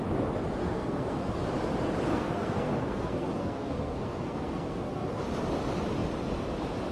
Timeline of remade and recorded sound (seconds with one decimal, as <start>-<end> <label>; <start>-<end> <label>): 0.0-0.6 recorded; 0.6-1.3 remade; 1.3-2.1 recorded; 2.1-5.2 remade; 5.2-6.9 recorded